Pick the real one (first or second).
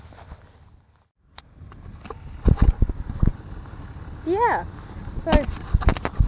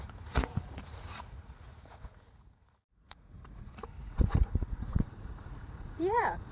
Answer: first